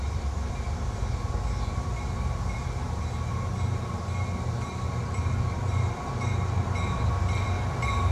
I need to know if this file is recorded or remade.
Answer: remade